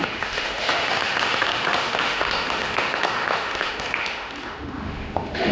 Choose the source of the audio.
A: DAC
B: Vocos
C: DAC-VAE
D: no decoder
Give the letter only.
C